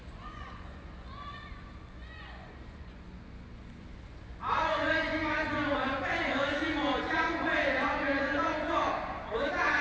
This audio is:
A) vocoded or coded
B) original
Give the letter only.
A